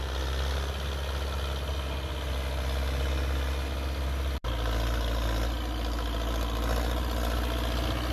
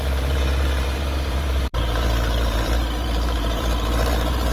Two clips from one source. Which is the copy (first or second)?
second